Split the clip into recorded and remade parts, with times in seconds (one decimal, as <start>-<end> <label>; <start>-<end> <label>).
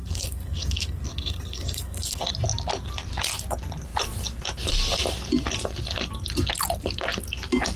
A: 0.0-2.3 remade; 2.3-7.8 recorded